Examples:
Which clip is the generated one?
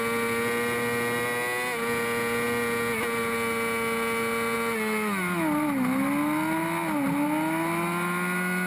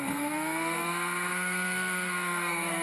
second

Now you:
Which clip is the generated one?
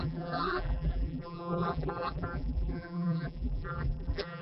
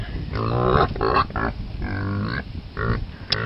first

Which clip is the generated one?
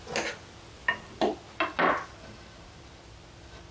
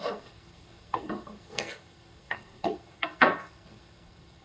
second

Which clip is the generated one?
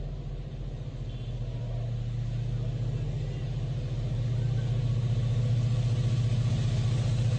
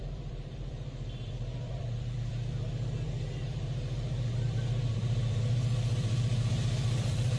second